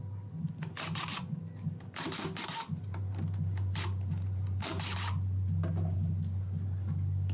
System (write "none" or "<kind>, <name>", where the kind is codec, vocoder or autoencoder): none